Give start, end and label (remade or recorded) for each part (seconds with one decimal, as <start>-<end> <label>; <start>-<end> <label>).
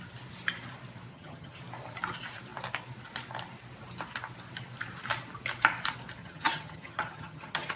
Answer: 0.0-1.1 recorded; 1.1-1.6 remade; 1.6-6.2 recorded; 6.2-7.8 remade